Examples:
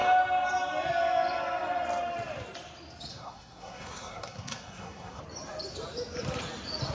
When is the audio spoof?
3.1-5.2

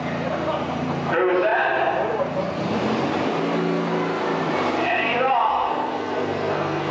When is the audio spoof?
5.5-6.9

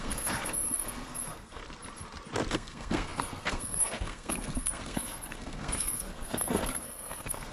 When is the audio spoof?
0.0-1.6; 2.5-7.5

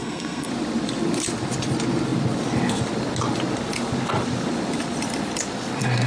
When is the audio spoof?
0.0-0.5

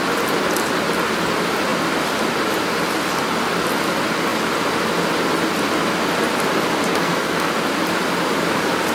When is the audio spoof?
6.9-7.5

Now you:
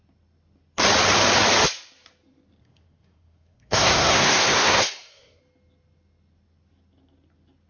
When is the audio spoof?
2.6-5.4